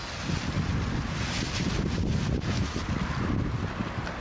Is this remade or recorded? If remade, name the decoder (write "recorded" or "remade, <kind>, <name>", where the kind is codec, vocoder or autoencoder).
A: recorded